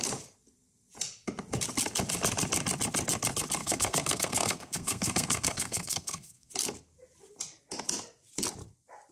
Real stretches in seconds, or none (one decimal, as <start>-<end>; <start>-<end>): 0.0-3.6; 6.5-9.1